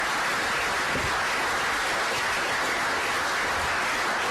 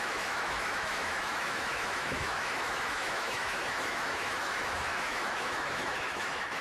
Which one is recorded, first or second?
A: first